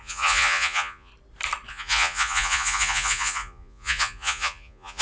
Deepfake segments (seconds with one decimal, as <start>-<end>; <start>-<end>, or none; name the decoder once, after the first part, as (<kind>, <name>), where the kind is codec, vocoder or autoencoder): 0.0-1.1 (vocoder, Vocos); 1.7-5.0